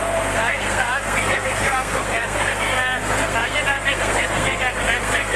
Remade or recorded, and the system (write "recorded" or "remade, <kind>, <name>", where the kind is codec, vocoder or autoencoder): remade, codec, SNAC